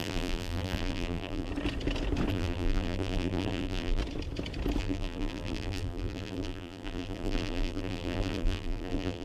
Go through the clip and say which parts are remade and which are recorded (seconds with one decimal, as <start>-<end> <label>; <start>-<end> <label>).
0.0-1.5 remade; 1.5-2.3 recorded; 2.3-4.0 remade; 4.0-4.8 recorded; 4.8-9.2 remade